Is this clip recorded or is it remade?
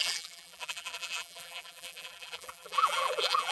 remade